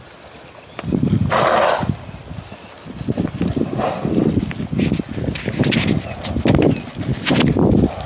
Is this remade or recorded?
recorded